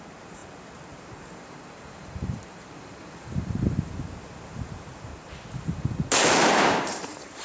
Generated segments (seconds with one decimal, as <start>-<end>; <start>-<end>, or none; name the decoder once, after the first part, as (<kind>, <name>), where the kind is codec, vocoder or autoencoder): 0.0-5.1 (vocoder, BigVGAN v2); 6.5-7.4